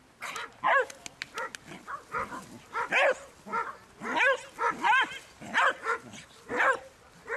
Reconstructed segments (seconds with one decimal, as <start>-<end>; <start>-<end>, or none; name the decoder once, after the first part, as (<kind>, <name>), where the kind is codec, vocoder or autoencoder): none